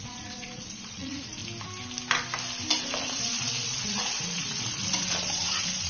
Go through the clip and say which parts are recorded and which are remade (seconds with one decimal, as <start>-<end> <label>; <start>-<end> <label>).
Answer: 0.0-1.4 remade; 1.4-3.0 recorded; 3.0-5.9 remade